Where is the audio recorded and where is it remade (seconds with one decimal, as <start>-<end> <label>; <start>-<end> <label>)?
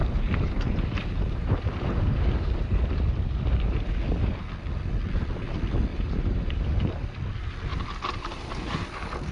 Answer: 0.0-3.9 remade; 3.9-5.9 recorded; 5.9-6.6 remade; 6.6-7.7 recorded; 7.7-9.3 remade